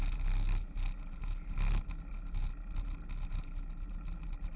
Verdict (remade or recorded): recorded